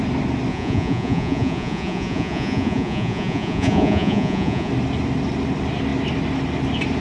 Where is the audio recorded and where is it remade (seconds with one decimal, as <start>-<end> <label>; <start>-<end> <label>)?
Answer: 0.0-0.5 recorded; 0.5-4.7 remade; 4.7-7.0 recorded

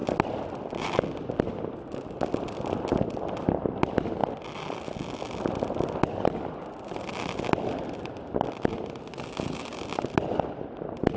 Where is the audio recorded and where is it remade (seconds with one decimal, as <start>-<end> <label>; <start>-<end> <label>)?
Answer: 0.0-11.2 recorded

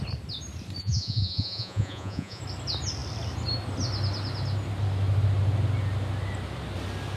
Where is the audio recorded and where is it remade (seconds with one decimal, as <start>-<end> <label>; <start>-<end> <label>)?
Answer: 0.0-0.8 recorded; 0.8-2.4 remade; 2.4-7.2 recorded

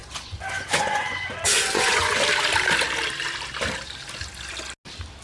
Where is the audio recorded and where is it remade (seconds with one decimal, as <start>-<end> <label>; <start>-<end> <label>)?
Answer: 0.0-2.2 remade; 2.2-5.2 recorded

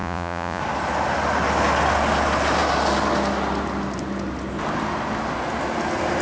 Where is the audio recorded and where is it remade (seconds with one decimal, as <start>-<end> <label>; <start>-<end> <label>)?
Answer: 0.0-0.6 remade; 0.6-6.2 recorded

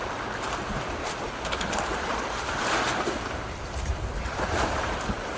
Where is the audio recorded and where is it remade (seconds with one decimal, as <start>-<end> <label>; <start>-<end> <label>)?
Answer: 0.0-5.4 recorded

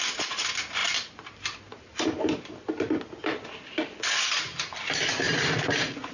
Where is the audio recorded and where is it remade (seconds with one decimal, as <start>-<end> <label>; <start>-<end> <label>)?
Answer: 0.0-6.1 recorded

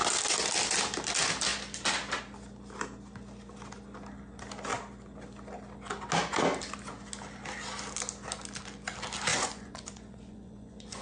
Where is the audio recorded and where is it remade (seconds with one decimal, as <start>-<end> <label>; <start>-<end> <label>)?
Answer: 0.0-9.3 recorded; 9.3-11.0 remade